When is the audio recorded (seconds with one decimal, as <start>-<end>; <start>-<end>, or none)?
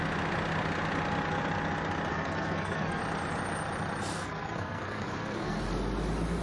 0.0-2.1; 3.0-4.1; 5.6-6.4